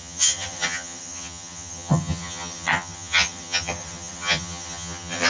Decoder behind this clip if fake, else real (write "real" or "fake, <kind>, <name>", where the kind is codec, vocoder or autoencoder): fake, vocoder, HiFi-GAN